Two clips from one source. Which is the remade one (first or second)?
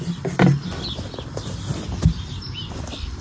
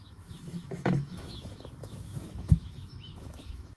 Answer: second